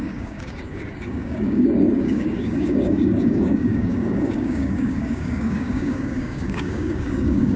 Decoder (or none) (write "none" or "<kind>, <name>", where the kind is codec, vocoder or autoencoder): codec, DAC